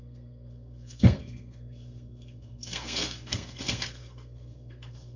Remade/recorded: remade